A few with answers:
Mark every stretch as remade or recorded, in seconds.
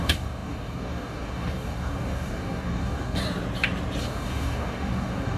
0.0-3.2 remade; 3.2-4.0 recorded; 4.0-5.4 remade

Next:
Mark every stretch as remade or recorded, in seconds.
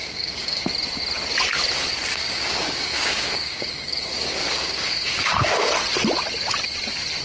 0.0-0.6 remade; 0.6-2.1 recorded; 2.1-5.7 remade; 5.7-7.2 recorded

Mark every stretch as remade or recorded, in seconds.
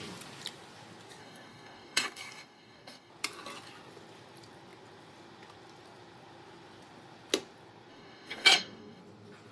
0.0-1.2 recorded; 1.2-3.1 remade; 3.1-7.9 recorded; 7.9-9.0 remade; 9.0-9.5 recorded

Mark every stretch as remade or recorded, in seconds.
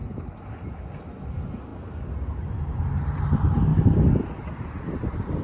0.0-5.4 recorded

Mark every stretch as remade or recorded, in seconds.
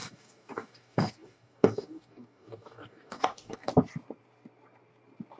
0.0-3.7 remade; 3.7-5.4 recorded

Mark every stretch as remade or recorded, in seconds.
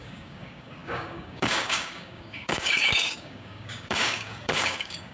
0.0-5.1 remade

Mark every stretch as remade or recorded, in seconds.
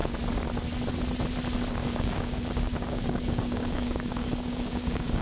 0.0-1.7 recorded; 1.7-5.2 remade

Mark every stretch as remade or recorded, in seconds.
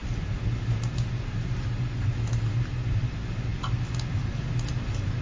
0.0-5.2 recorded